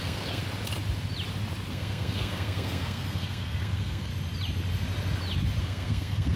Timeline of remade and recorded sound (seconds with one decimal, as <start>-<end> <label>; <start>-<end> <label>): 0.0-0.4 remade; 0.4-1.7 recorded; 1.7-4.1 remade; 4.1-5.6 recorded; 5.6-6.4 remade